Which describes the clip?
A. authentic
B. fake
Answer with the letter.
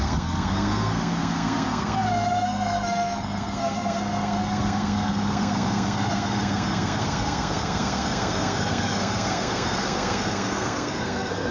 B